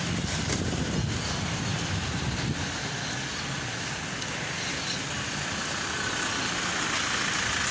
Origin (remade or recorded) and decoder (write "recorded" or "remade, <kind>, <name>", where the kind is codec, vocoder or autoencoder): recorded